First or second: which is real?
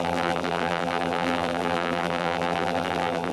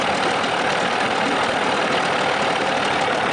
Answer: second